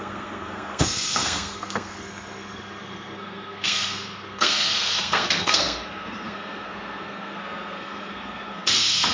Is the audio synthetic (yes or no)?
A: yes